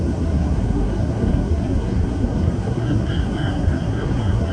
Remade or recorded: remade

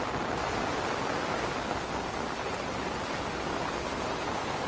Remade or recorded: recorded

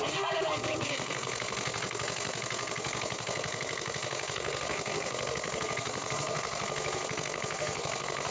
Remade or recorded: remade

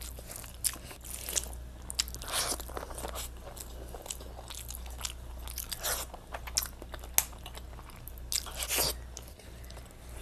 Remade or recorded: recorded